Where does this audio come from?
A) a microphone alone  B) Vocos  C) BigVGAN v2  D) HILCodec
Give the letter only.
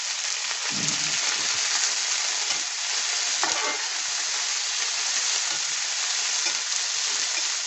A